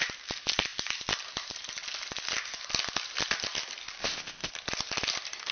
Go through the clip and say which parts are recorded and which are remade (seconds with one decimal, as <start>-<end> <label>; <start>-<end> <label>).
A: 0.0-4.0 recorded; 4.0-4.5 remade; 4.5-5.5 recorded